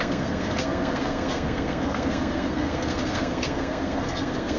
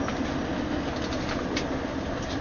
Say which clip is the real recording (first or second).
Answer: second